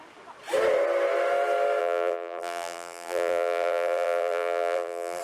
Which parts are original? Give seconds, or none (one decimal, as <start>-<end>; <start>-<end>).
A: 0.0-1.8